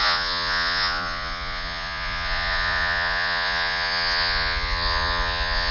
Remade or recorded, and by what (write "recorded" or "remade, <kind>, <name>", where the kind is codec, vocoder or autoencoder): remade, vocoder, Vocos